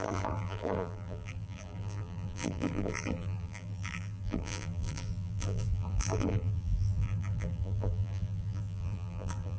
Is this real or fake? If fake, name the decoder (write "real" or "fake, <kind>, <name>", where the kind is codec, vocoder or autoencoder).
fake, vocoder, BigVGAN v2